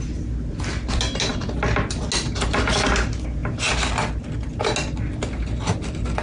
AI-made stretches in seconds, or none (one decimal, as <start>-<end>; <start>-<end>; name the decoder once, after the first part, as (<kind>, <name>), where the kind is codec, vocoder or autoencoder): none